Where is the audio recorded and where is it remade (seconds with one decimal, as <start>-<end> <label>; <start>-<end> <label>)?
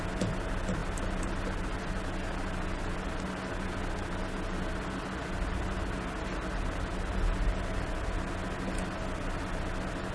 0.0-10.1 recorded